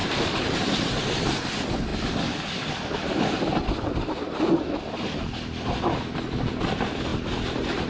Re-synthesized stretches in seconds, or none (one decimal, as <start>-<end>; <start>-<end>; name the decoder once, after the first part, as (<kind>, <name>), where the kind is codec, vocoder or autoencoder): 0.0-1.3 (vocoder, BigVGAN v2)